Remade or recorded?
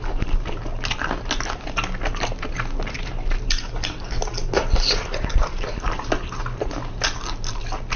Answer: recorded